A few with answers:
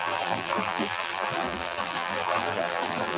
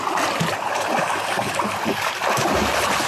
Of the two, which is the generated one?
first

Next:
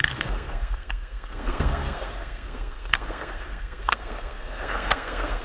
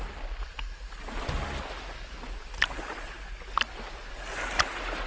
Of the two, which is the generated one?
first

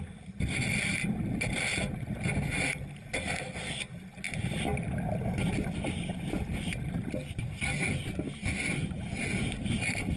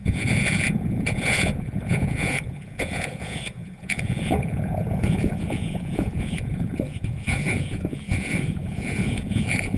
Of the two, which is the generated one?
second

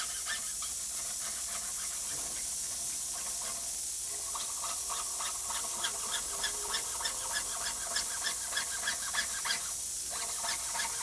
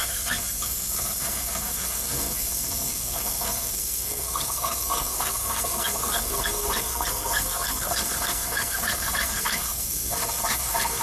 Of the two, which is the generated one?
second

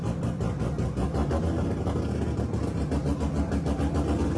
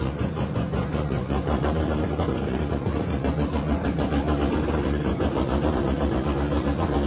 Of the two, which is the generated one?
second